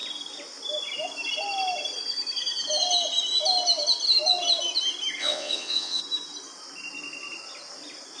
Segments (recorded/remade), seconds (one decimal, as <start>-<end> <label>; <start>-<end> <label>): 0.0-5.2 recorded; 5.2-6.0 remade; 6.0-8.2 recorded